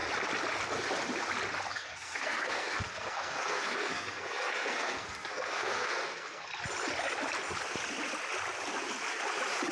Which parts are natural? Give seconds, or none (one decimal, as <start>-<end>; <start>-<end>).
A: 0.0-1.7; 6.5-9.7